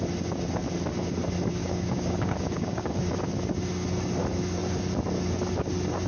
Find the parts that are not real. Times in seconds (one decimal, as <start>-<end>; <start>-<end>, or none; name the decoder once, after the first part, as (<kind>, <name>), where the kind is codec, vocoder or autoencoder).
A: 1.6-3.1 (codec, DAC)

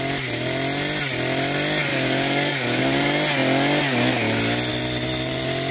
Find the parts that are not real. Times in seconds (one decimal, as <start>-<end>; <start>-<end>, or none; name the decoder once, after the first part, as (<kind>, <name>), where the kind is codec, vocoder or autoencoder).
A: 1.9-2.8 (codec, DAC)

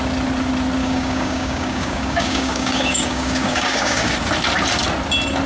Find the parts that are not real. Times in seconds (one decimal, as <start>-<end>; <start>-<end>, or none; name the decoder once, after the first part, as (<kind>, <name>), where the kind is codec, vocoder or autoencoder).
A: 0.8-4.1 (codec, DAC)

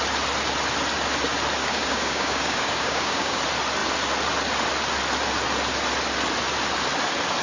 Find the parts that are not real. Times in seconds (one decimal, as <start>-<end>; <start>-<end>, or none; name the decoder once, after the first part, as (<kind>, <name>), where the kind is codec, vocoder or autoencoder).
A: 1.6-3.4 (codec, DAC)

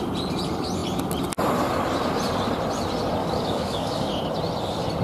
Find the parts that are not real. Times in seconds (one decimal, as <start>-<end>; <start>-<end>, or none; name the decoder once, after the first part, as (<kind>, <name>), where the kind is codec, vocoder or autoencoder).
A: 3.2-4.1 (codec, DAC)

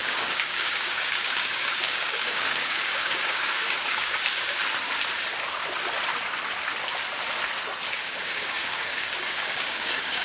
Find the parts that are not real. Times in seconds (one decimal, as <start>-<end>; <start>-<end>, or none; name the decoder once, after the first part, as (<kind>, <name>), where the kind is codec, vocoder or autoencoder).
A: 0.0-4.6 (codec, DAC); 8.0-10.2